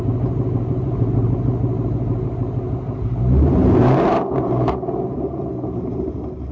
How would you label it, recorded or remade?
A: remade